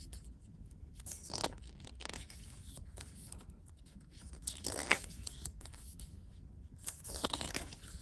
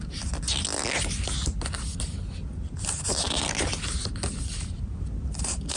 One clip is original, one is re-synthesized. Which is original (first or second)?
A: second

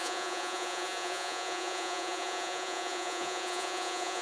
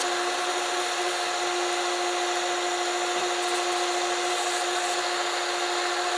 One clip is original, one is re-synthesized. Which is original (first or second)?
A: second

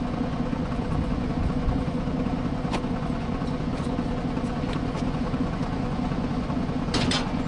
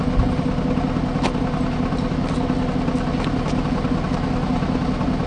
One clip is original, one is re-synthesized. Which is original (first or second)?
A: second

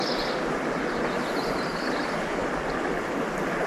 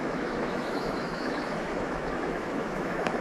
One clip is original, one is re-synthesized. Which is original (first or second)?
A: first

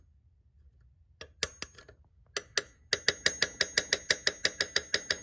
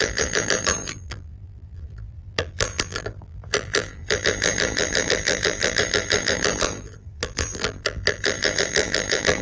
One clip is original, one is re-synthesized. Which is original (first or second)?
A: first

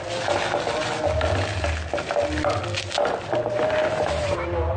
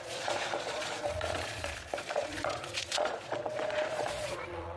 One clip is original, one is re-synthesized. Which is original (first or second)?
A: first